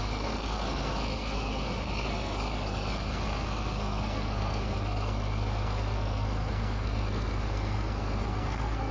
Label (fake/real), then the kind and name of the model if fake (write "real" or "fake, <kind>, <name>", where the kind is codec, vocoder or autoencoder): fake, codec, SNAC